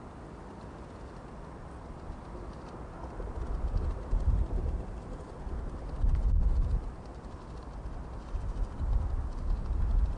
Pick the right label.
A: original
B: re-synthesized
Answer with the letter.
A